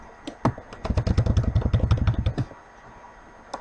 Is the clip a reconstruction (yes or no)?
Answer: no